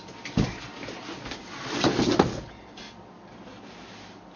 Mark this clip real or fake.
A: real